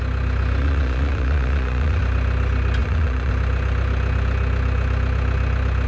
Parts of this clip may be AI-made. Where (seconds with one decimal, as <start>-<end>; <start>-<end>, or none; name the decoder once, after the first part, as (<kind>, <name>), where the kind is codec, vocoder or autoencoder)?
0.6-2.0 (vocoder, Vocos); 2.8-3.3